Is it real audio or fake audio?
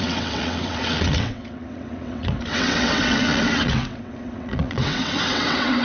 fake